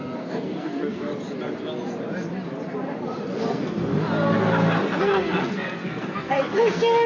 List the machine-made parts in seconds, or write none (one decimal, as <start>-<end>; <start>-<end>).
0.0-1.1; 3.4-3.9; 5.0-7.1